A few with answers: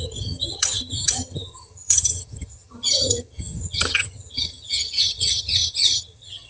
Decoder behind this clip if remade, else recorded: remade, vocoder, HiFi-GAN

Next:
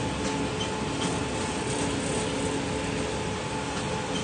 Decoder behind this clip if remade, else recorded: recorded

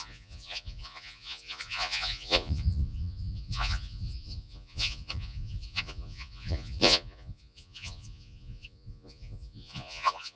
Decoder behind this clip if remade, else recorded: remade, vocoder, Vocos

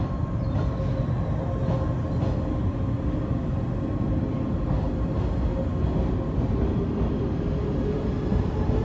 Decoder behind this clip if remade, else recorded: recorded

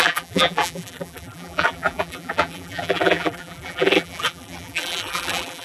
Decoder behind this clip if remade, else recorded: remade, vocoder, BigVGAN v2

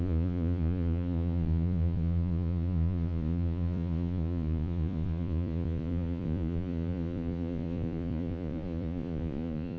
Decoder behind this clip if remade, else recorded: remade, vocoder, Vocos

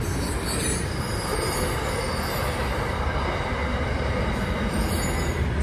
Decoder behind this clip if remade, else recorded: recorded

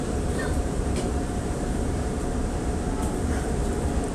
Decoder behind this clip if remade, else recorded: remade, vocoder, BigVGAN v2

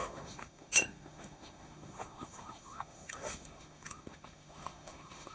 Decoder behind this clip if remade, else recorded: remade, autoencoder, DAC-VAE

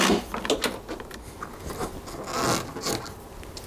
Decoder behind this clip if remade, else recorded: recorded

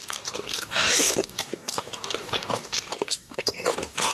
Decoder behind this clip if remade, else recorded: remade, codec, DAC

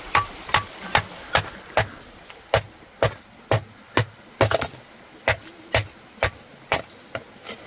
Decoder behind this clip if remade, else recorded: recorded